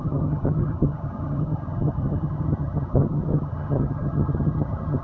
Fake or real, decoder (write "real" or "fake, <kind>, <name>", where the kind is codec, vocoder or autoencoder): fake, vocoder, HiFi-GAN